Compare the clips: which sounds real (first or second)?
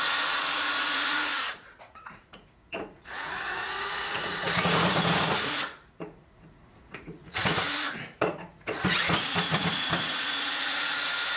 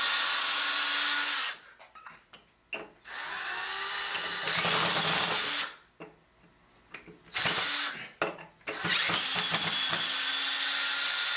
second